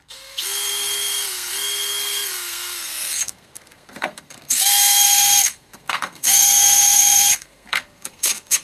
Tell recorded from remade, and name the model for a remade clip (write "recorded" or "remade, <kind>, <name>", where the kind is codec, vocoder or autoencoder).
remade, codec, SNAC